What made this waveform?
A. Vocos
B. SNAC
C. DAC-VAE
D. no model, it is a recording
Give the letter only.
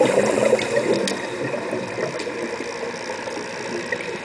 D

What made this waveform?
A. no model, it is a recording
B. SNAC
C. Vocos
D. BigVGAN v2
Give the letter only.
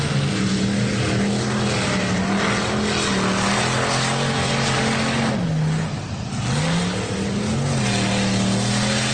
A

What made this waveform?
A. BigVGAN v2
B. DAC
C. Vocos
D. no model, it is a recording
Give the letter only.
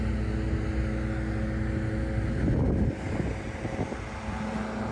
D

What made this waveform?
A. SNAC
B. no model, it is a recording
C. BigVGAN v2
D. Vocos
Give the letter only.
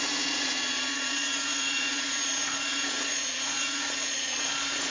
D